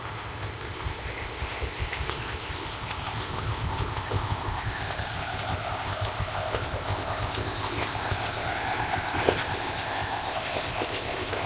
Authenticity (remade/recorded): remade